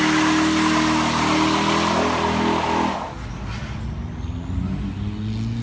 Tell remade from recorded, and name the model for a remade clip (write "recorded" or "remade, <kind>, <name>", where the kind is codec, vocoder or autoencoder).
recorded